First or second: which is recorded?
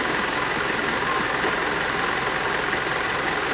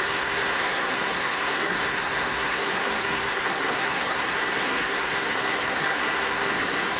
first